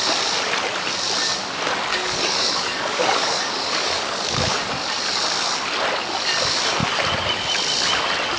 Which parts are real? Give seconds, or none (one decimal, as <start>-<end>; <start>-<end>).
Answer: 0.0-1.9; 4.6-8.4